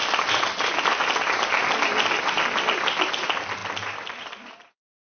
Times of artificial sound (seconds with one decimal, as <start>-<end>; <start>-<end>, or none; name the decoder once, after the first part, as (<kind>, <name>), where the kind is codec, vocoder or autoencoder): none